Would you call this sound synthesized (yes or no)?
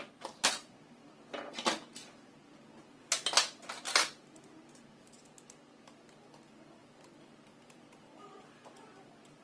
no